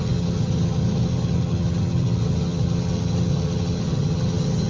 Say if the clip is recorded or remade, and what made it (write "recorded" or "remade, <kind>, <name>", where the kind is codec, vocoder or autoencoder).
remade, vocoder, HiFi-GAN